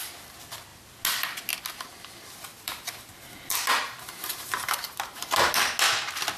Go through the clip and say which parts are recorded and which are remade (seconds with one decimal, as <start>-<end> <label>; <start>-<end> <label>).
0.0-2.5 recorded; 2.5-5.5 remade; 5.5-6.4 recorded